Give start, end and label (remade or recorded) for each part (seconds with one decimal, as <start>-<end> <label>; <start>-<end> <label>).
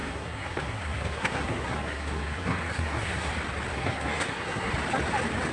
0.0-3.3 remade; 3.3-3.7 recorded; 3.7-4.7 remade; 4.7-5.5 recorded